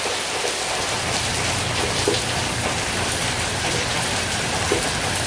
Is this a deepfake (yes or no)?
no